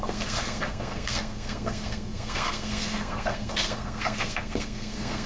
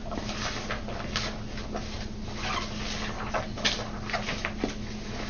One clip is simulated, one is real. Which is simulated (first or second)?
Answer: first